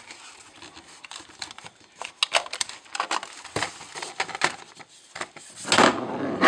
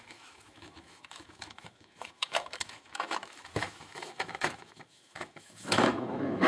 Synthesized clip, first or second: second